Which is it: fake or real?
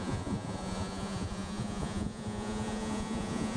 fake